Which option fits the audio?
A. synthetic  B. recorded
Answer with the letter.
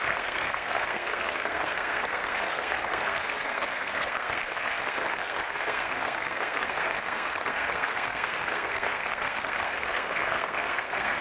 A